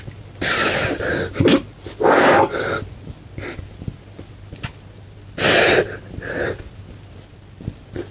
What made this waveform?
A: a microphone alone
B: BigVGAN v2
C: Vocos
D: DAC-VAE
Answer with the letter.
A